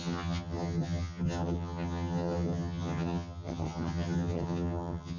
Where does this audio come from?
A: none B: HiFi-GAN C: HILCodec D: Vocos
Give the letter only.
B